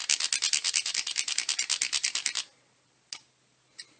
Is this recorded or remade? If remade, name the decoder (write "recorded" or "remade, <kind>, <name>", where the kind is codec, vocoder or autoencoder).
recorded